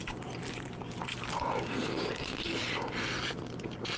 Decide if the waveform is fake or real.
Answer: fake